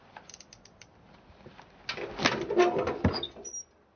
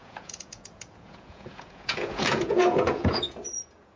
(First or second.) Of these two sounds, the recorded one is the first